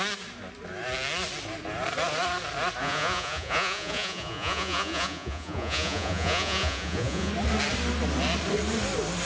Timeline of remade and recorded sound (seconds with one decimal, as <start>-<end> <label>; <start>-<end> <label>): 0.0-2.8 recorded; 2.8-7.3 remade; 7.3-9.3 recorded